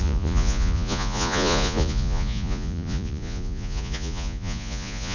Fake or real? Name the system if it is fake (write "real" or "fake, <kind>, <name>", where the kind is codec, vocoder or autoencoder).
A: fake, vocoder, Vocos